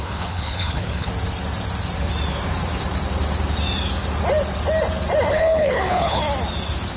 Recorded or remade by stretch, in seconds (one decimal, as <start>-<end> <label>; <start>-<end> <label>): 0.0-1.1 remade; 1.1-5.3 recorded; 5.3-6.2 remade; 6.2-7.0 recorded